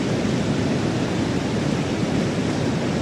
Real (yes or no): yes